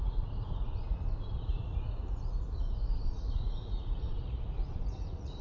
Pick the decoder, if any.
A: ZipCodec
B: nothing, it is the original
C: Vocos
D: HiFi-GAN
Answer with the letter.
C